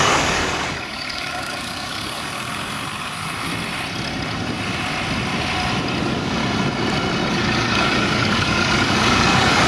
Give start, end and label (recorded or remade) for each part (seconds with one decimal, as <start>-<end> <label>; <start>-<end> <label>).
0.0-3.5 remade; 3.5-6.0 recorded; 6.0-6.4 remade; 6.4-7.3 recorded; 7.3-9.7 remade